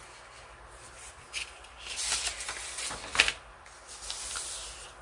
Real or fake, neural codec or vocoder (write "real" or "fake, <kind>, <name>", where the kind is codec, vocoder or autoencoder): real